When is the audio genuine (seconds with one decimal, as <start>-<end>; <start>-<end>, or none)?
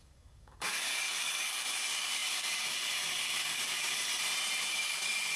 4.1-4.7